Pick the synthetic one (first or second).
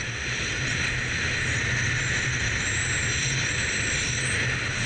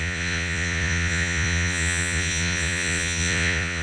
second